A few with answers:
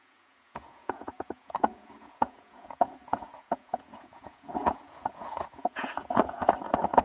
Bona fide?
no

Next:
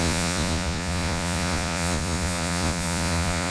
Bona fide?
no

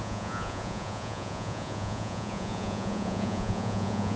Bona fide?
no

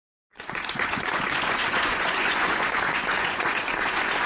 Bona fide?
no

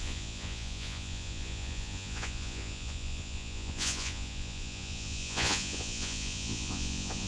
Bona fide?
no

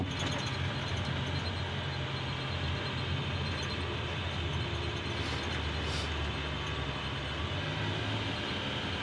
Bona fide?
yes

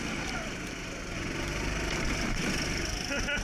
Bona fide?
yes